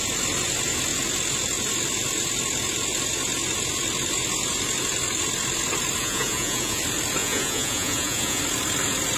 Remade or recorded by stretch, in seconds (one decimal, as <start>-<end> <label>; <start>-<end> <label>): 0.0-6.0 recorded; 6.0-6.8 remade; 6.8-7.2 recorded; 7.2-8.4 remade; 8.4-9.2 recorded

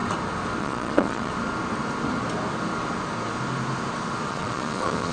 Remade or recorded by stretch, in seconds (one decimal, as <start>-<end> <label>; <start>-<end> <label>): 0.0-0.6 recorded; 0.6-1.3 remade; 1.3-4.3 recorded; 4.3-5.1 remade

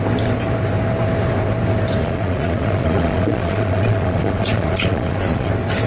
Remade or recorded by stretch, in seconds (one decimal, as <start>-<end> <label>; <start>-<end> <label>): 0.0-2.0 recorded; 2.0-5.5 remade; 5.5-5.9 recorded

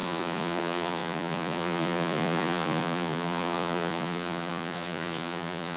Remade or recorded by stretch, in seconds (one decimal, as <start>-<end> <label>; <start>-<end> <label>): 0.0-5.8 remade

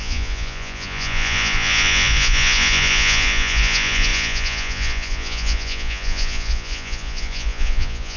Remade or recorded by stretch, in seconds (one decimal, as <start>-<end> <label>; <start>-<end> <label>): 0.0-8.2 remade

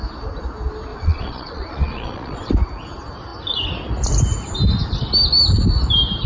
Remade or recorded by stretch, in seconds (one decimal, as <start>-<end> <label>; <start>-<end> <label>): 0.0-0.9 recorded; 0.9-2.5 remade; 2.5-6.3 recorded

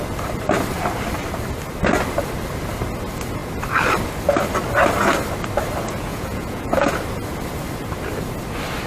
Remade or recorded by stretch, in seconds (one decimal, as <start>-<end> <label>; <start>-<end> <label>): 0.0-6.1 recorded; 6.1-6.9 remade; 6.9-8.9 recorded